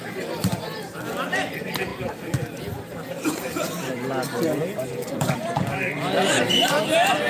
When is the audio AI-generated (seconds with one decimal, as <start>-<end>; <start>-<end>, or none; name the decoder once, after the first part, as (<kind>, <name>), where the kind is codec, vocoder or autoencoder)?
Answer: 0.0-1.9 (vocoder, BigVGAN v2); 2.6-7.3